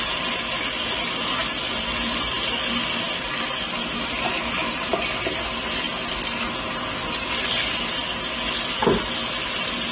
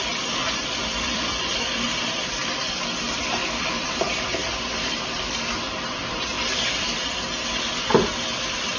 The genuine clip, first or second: first